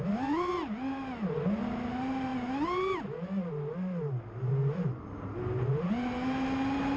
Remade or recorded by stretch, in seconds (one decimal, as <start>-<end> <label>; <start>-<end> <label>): 0.0-7.0 recorded